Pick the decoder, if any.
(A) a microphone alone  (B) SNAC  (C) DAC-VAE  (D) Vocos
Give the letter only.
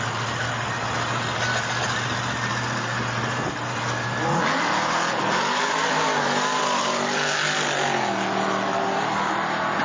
A